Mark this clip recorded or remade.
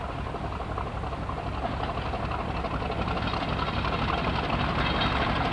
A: recorded